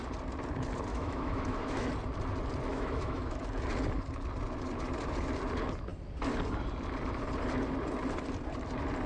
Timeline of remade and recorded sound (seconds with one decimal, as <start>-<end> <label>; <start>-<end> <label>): 0.0-0.9 recorded; 0.9-1.9 remade; 1.9-2.7 recorded; 2.7-3.4 remade; 3.4-9.1 recorded